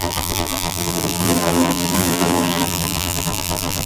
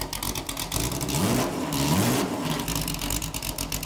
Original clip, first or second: second